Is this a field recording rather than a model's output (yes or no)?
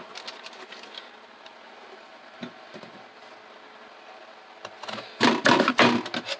yes